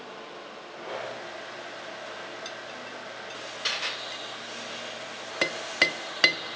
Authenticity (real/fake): real